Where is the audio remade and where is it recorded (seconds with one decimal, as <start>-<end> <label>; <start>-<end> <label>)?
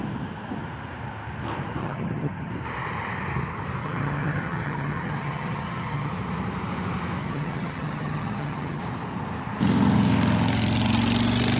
0.0-1.8 recorded; 1.8-2.5 remade; 2.5-3.8 recorded; 3.8-6.1 remade; 6.1-7.2 recorded; 7.2-8.8 remade; 8.8-11.6 recorded